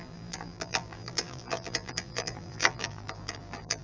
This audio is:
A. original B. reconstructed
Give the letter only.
B